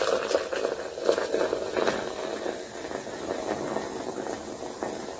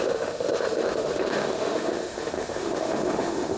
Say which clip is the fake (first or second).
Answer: second